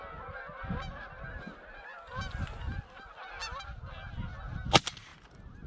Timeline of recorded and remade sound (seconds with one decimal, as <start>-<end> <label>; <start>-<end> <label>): 0.0-5.7 recorded